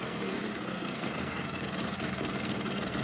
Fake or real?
fake